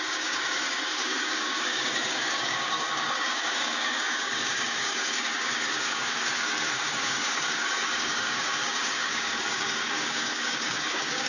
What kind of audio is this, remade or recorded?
remade